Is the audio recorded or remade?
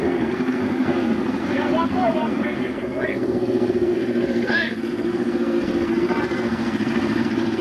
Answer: remade